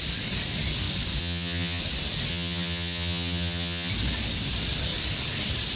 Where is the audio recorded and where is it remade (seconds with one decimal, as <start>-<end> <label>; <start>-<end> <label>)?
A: 0.0-1.2 recorded; 1.2-1.8 remade; 1.8-2.3 recorded; 2.3-3.9 remade; 3.9-5.8 recorded